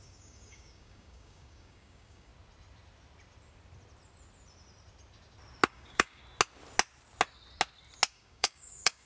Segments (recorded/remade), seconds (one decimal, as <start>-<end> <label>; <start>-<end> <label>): 0.0-2.3 remade; 2.3-5.7 recorded; 5.7-6.2 remade; 6.2-8.1 recorded; 8.1-9.1 remade